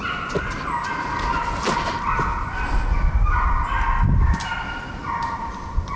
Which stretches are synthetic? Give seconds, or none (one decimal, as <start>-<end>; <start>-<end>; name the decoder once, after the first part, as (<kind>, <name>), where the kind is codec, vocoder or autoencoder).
none